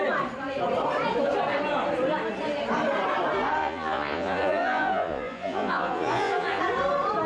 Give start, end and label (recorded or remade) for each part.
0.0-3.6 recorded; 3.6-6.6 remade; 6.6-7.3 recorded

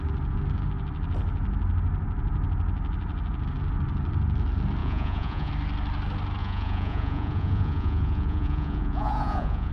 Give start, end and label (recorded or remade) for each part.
0.0-4.8 recorded; 4.8-5.5 remade; 5.5-6.4 recorded; 6.4-9.7 remade